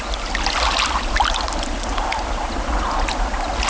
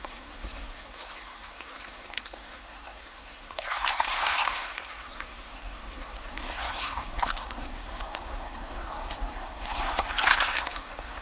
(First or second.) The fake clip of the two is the second